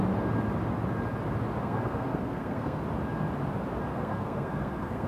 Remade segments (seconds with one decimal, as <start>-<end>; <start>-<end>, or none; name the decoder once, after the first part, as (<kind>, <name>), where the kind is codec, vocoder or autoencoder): 1.6-2.8 (codec, SNAC); 3.9-5.1